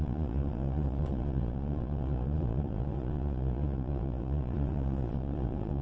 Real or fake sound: fake